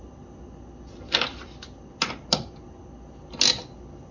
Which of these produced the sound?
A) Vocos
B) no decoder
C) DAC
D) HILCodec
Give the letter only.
B